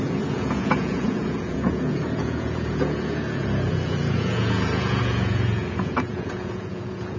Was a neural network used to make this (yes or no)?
yes